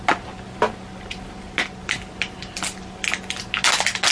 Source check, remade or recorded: recorded